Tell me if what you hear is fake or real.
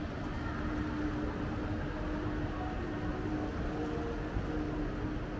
real